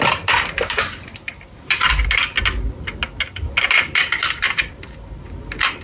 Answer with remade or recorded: recorded